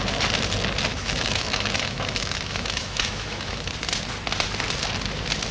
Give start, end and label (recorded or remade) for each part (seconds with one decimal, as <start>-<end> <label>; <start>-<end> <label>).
0.0-0.9 recorded; 0.9-3.7 remade; 3.7-5.5 recorded